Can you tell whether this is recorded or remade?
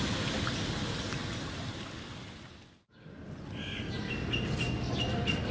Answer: recorded